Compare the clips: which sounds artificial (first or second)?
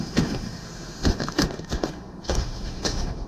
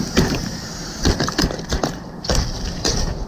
first